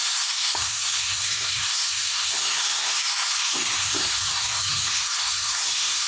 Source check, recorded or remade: remade